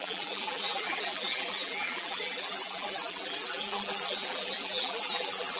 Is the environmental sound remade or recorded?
remade